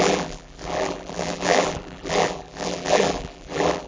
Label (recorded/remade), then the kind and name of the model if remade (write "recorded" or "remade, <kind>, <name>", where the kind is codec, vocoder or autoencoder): remade, vocoder, BigVGAN v2